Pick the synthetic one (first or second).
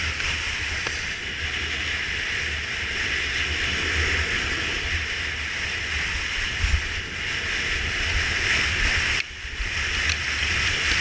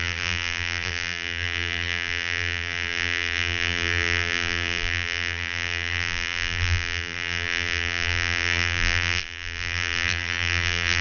second